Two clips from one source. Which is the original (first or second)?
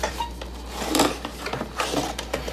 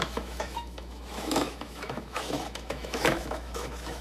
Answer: first